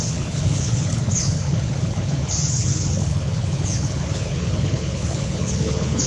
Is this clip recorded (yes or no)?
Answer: no